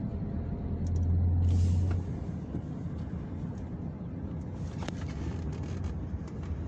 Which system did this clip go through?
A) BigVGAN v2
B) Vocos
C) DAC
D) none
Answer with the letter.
D